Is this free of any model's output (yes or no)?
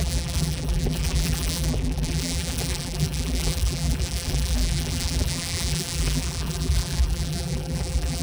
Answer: no